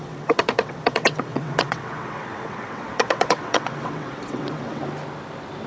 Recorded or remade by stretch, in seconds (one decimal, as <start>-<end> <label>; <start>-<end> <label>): 0.0-4.8 remade; 4.8-5.7 recorded